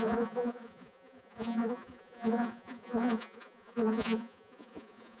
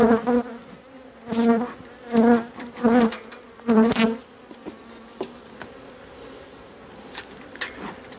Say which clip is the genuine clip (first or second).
second